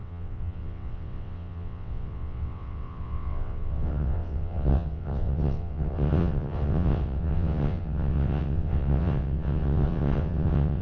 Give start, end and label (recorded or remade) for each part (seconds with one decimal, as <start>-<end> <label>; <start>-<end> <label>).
0.0-10.8 remade